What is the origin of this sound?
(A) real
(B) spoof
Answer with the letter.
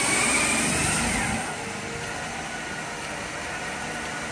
A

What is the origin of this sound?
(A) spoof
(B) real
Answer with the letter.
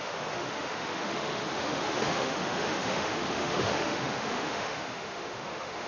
A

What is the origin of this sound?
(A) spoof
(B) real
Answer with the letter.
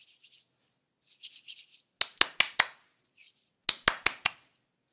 B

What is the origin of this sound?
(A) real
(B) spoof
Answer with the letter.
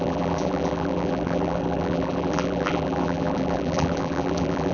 B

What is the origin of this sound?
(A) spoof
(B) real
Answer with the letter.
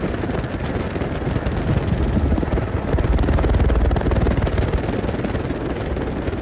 B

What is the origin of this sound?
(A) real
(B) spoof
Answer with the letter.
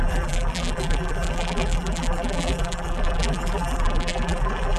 B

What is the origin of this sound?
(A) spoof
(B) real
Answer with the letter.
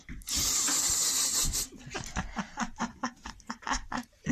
B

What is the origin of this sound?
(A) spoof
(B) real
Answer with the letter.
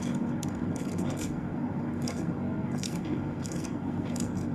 A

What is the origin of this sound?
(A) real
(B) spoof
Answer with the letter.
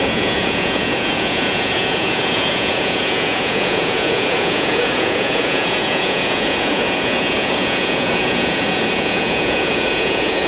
B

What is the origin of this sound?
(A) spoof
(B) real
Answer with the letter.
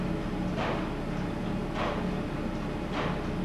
B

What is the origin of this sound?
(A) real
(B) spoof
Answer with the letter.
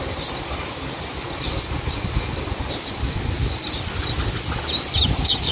B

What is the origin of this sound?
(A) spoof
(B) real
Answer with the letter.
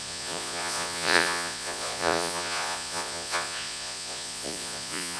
A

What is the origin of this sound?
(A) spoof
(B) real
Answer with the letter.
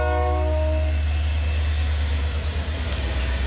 B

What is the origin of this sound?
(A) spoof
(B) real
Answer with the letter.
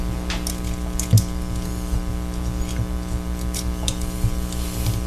B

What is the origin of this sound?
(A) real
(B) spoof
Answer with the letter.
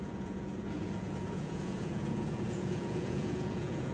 B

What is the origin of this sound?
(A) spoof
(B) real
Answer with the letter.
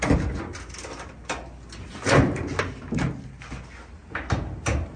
B